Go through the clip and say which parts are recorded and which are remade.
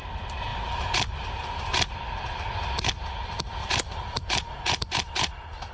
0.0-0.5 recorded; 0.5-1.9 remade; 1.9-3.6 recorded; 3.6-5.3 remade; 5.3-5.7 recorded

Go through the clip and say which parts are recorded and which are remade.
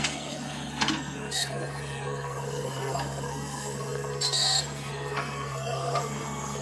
0.0-6.6 remade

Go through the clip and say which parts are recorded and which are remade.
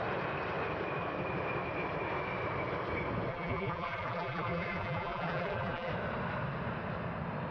0.0-3.3 recorded; 3.3-5.9 remade; 5.9-7.5 recorded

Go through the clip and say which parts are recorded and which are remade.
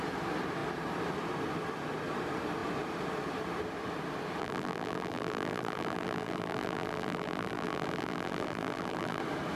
0.0-4.4 recorded; 4.4-9.2 remade; 9.2-9.6 recorded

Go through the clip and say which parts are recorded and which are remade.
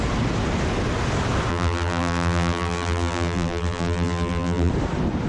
0.0-1.5 recorded; 1.5-4.7 remade; 4.7-5.3 recorded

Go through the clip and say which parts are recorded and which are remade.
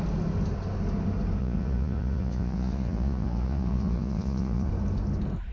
0.0-1.4 recorded; 1.4-4.7 remade; 4.7-5.5 recorded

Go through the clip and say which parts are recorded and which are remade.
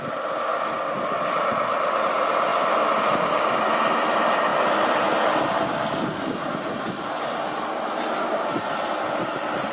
0.0-9.7 recorded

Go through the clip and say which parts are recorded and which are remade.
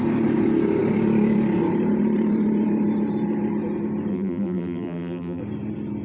0.0-4.1 recorded; 4.1-5.4 remade; 5.4-6.0 recorded